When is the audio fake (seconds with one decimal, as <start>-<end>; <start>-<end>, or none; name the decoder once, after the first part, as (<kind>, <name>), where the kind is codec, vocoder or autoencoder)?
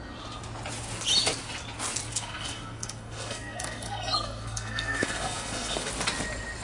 2.1-5.9 (codec, SNAC)